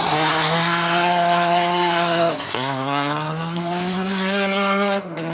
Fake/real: fake